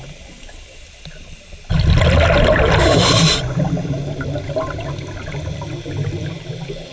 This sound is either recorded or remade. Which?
recorded